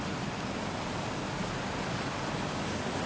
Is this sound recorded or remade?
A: recorded